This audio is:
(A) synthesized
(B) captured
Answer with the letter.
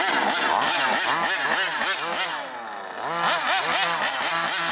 B